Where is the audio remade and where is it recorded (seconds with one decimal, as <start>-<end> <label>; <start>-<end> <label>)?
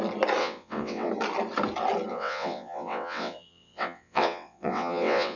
0.0-0.4 recorded; 0.4-1.1 remade; 1.1-2.1 recorded; 2.1-5.4 remade